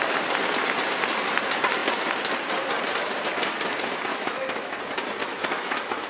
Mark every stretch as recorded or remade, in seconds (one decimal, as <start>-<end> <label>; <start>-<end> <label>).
0.0-4.1 recorded; 4.1-4.8 remade; 4.8-5.2 recorded; 5.2-6.1 remade